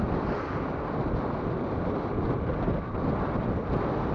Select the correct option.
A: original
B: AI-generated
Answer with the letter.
A